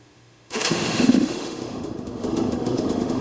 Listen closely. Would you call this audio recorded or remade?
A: remade